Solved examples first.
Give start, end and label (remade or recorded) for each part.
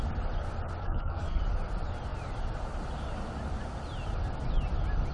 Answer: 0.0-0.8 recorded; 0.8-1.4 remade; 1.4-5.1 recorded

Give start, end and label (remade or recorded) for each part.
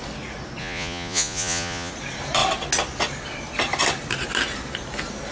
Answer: 0.0-0.6 recorded; 0.6-1.9 remade; 1.9-5.3 recorded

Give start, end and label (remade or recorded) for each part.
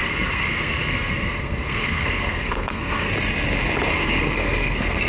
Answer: 0.0-3.1 remade; 3.1-3.9 recorded; 3.9-5.1 remade